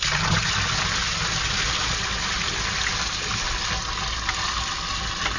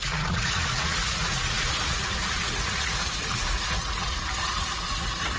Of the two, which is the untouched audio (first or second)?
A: first